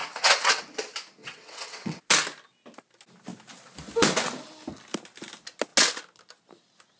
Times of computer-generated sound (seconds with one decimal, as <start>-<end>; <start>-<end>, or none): 0.0-0.6; 1.2-2.0